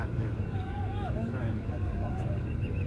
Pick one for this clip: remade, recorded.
remade